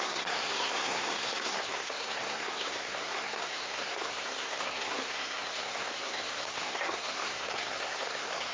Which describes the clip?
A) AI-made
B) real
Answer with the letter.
A